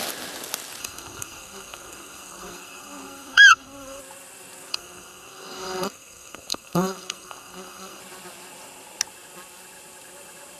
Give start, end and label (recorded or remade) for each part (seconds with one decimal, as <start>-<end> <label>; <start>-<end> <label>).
0.0-0.8 recorded; 0.8-4.0 remade; 4.0-4.7 recorded; 4.7-8.0 remade; 8.0-10.6 recorded